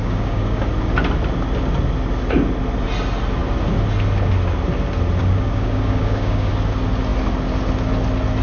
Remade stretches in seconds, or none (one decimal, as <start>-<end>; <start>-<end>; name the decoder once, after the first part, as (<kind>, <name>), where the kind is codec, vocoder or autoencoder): 0.0-0.6 (codec, DAC); 5.2-6.5